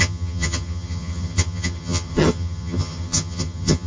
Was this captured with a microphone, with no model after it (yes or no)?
no